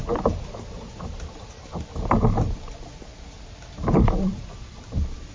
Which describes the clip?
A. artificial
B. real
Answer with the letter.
B